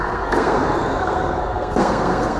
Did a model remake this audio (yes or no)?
yes